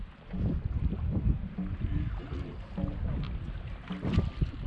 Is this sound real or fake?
real